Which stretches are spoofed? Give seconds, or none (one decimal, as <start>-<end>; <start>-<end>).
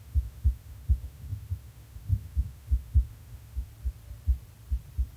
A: 0.0-3.7